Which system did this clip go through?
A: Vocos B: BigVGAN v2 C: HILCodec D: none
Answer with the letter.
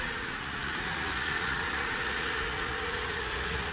A